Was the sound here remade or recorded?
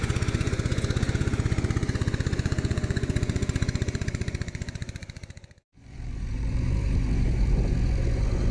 remade